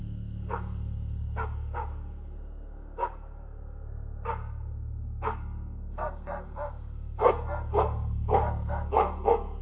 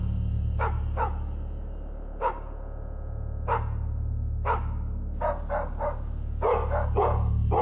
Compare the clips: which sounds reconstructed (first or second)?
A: first